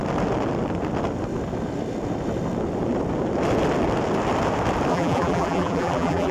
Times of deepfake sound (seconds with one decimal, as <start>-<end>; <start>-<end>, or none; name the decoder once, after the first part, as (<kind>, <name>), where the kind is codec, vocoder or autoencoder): 4.9-6.3 (vocoder, BigVGAN v2)